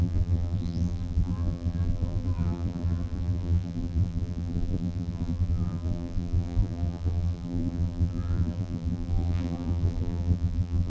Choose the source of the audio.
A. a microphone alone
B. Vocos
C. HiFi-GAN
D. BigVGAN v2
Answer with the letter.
D